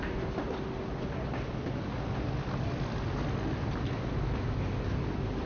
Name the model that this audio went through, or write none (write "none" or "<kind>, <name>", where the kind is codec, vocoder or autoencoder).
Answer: none